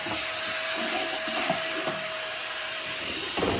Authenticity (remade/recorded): remade